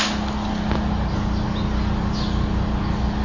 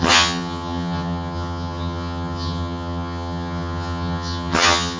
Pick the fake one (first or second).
second